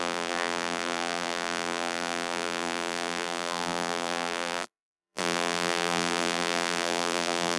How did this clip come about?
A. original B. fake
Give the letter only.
B